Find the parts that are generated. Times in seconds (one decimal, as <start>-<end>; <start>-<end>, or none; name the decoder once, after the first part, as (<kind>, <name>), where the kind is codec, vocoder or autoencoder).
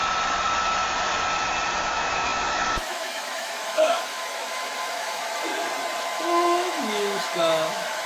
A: 1.9-5.5 (autoencoder, DAC-VAE); 6.0-8.1